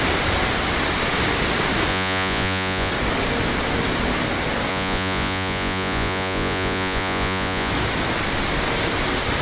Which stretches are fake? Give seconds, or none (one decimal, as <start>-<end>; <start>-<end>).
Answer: 1.9-2.9; 4.7-7.7